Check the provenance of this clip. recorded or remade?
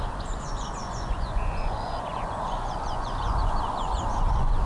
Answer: remade